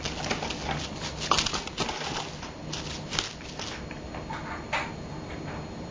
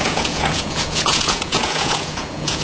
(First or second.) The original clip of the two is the first